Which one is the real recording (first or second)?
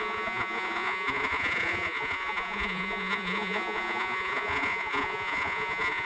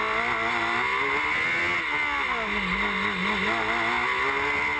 second